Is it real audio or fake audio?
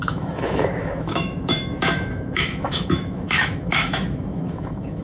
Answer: fake